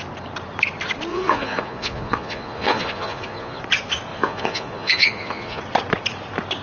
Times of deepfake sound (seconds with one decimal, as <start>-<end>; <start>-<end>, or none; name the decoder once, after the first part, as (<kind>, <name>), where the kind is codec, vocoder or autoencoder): 1.1-3.6 (vocoder, Vocos); 4.1-5.6